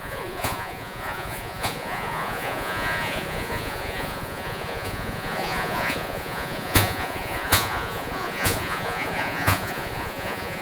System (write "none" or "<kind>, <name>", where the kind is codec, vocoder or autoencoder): vocoder, Vocos